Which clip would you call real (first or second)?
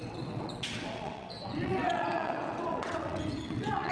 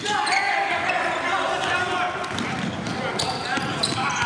second